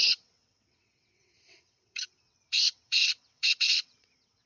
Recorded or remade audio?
remade